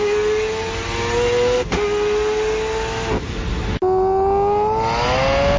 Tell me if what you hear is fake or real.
real